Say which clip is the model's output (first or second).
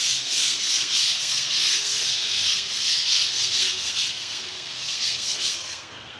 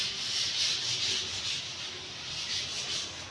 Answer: first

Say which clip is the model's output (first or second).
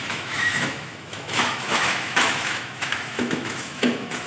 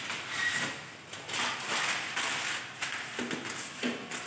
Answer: first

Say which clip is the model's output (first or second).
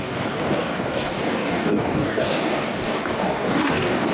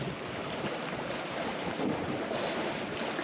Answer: first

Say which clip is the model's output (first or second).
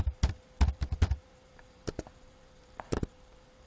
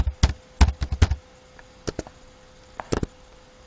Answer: first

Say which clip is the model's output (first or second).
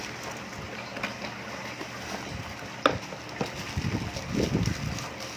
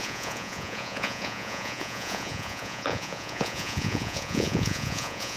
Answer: second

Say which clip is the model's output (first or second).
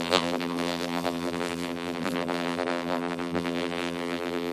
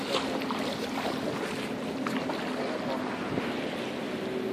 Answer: first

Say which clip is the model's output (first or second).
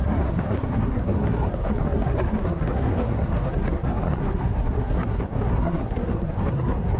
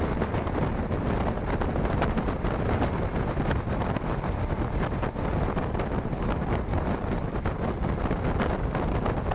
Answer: first